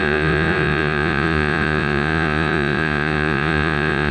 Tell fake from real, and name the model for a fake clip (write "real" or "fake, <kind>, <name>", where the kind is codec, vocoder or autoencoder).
fake, vocoder, Vocos